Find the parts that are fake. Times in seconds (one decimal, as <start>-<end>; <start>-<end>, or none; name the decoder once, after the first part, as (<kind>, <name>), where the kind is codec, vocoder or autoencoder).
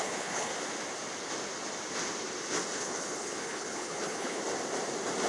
0.0-0.5 (codec, HILCodec); 2.8-4.4